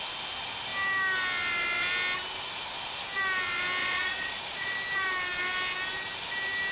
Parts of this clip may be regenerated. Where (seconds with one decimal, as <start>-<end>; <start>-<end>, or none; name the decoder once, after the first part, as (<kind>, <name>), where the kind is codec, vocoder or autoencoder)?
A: 3.8-4.7 (vocoder, Vocos)